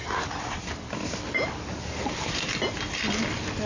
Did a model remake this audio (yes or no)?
no